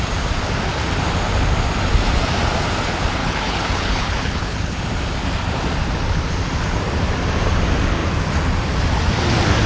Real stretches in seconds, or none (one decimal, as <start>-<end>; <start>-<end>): 0.0-3.2; 4.8-9.7